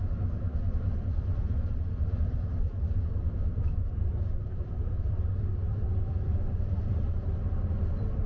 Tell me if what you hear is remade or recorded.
remade